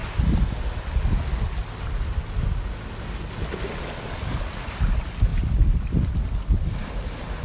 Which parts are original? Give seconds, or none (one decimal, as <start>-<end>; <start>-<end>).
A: 0.0-7.4